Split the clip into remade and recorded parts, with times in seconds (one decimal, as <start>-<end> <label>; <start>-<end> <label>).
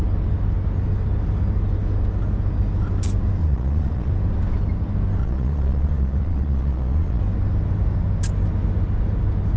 0.0-3.4 recorded; 3.4-4.1 remade; 4.1-5.2 recorded; 5.2-7.2 remade; 7.2-9.6 recorded